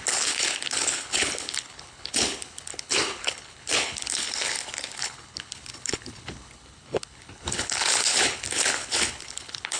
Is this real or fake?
fake